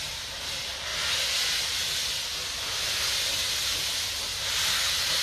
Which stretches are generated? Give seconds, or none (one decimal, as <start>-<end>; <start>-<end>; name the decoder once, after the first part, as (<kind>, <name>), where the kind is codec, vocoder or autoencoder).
none